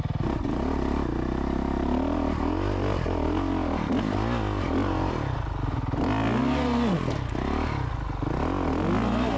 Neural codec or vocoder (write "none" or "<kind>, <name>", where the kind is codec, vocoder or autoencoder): none